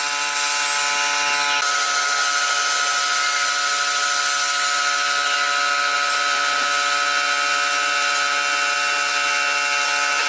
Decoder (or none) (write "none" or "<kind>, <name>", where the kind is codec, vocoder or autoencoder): none